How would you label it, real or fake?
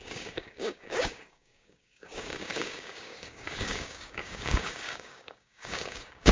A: fake